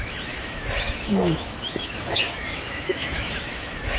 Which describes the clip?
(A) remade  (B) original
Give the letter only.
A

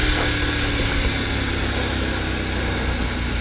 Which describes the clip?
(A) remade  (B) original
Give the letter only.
B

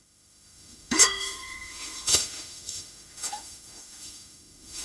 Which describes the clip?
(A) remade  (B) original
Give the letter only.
A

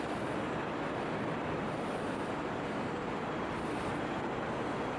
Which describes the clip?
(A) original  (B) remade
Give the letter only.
A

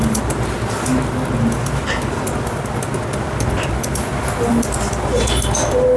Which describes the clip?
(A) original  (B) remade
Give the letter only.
A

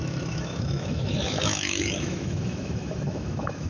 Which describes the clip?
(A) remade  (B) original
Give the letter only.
A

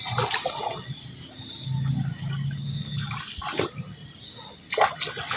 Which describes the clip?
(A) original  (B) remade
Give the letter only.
A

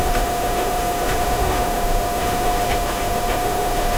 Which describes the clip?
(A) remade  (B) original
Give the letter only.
A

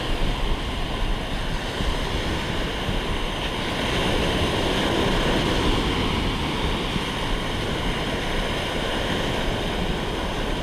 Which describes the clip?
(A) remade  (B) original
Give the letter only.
B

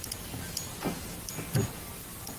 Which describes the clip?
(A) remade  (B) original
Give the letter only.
B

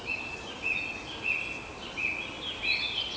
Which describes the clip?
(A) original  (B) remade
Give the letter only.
A